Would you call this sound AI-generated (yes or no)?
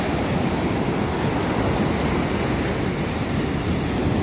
no